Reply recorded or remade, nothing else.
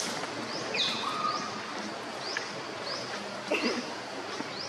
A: recorded